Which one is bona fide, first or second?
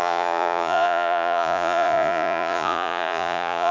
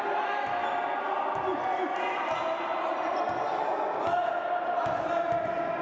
second